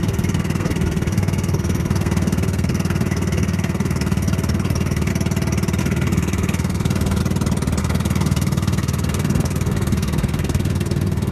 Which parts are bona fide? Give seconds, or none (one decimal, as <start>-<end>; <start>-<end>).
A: 5.1-5.8; 7.2-7.8